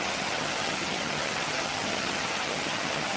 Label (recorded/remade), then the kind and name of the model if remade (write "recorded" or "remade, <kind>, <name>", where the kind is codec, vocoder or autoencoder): remade, vocoder, HiFi-GAN